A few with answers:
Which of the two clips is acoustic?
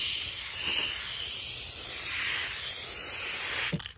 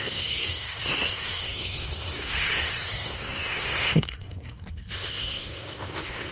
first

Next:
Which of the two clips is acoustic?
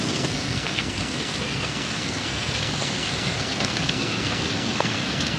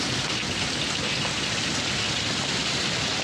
second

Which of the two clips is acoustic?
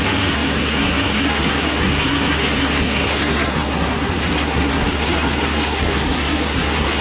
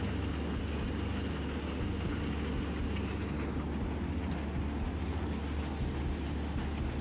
second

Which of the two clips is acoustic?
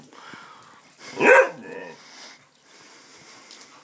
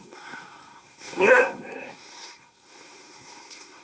first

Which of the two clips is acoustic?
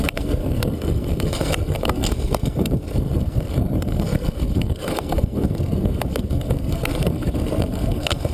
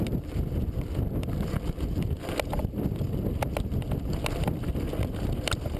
second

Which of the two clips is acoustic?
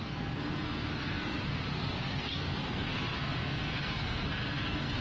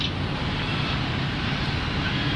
second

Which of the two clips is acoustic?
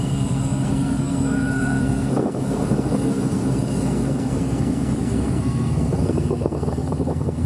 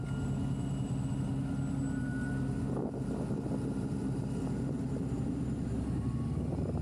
second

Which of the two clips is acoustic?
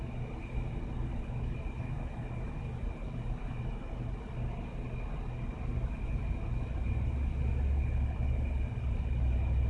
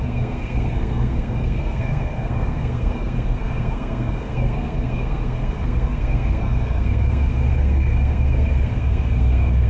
first